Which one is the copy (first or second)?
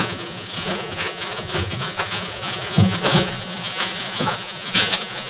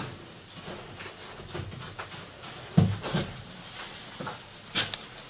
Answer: first